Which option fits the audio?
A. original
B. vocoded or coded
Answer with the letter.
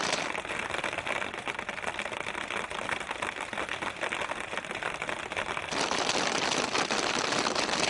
A